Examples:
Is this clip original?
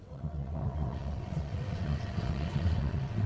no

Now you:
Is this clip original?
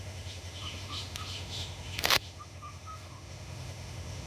no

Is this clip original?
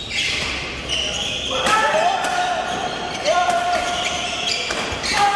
yes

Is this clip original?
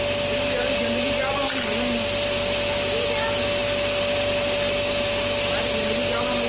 yes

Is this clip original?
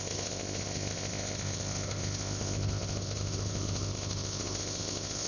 no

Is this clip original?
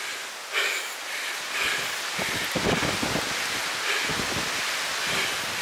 yes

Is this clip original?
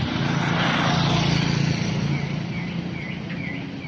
yes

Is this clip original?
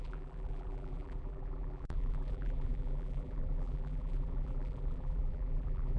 no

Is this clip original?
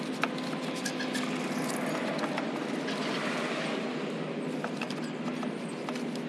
yes